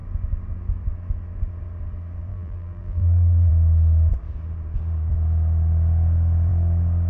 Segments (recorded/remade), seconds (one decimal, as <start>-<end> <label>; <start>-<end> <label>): 0.0-2.3 recorded; 2.3-3.5 remade; 3.5-7.1 recorded